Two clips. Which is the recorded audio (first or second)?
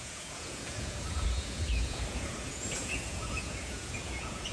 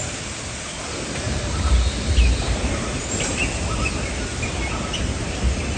second